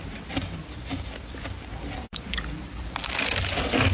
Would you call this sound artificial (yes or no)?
no